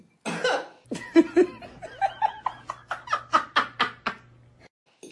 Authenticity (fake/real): real